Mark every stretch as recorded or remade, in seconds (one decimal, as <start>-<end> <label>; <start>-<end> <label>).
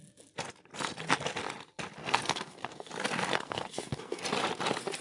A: 0.0-2.0 recorded; 2.0-2.9 remade; 2.9-3.3 recorded; 3.3-4.2 remade; 4.2-5.0 recorded